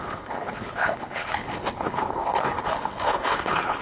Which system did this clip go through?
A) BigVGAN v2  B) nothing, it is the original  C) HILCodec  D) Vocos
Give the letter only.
C